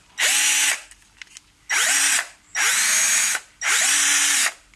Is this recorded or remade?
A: recorded